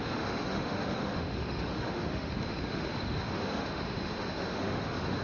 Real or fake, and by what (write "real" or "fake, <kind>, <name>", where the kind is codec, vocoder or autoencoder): fake, autoencoder, DAC-VAE